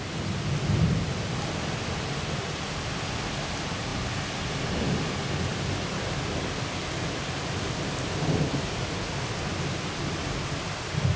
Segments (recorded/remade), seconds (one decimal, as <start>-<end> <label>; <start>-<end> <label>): 0.0-11.2 recorded

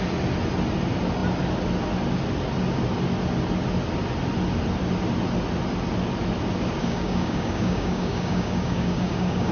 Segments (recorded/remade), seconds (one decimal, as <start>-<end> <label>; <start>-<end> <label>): 0.0-6.8 recorded; 6.8-9.5 remade

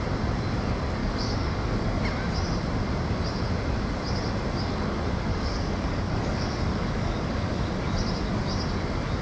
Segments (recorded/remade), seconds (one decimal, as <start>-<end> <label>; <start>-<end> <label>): 0.0-1.0 recorded; 1.0-2.0 remade; 2.0-5.3 recorded; 5.3-7.8 remade; 7.8-9.2 recorded

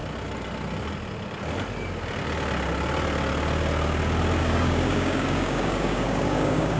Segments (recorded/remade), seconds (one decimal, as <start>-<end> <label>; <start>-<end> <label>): 0.0-4.4 recorded; 4.4-6.8 remade

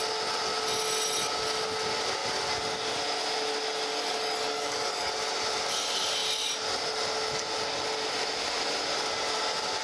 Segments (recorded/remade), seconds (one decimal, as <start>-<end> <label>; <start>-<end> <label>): 0.0-3.9 recorded; 3.9-5.1 remade; 5.1-9.8 recorded

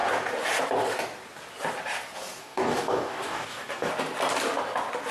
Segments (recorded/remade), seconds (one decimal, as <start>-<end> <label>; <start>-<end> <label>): 0.0-2.4 recorded; 2.4-3.9 remade; 3.9-5.1 recorded

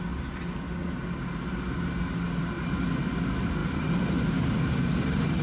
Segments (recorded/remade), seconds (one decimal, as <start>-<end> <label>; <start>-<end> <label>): 0.0-5.4 recorded